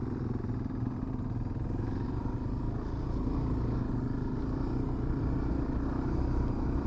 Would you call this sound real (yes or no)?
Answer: yes